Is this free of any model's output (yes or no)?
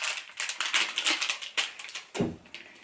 yes